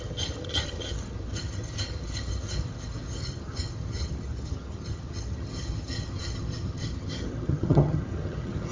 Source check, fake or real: fake